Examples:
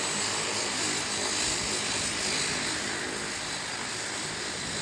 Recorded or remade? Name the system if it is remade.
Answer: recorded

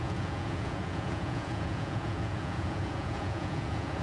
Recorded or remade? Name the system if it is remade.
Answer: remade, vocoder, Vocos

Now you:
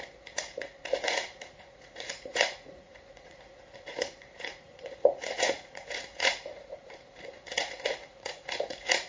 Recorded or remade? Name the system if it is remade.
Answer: remade, vocoder, Vocos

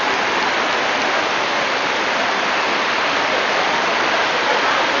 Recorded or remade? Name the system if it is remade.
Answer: recorded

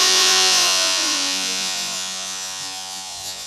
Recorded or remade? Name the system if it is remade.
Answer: remade, vocoder, Vocos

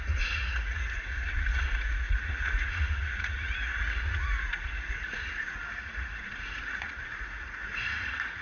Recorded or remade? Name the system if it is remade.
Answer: remade, vocoder, Vocos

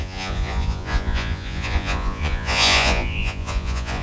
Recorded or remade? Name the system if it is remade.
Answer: remade, vocoder, Vocos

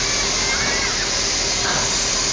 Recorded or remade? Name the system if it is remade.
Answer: recorded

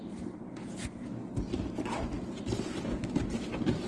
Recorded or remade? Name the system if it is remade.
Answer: recorded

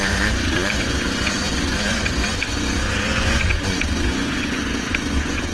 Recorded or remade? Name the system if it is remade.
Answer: remade, vocoder, Vocos